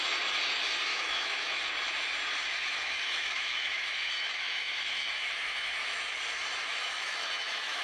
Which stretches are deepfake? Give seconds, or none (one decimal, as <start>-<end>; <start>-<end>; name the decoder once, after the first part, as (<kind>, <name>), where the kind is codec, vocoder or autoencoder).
0.9-1.7 (autoencoder, DAC-VAE); 2.6-6.0; 6.7-7.8